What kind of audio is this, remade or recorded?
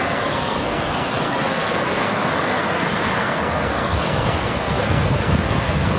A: remade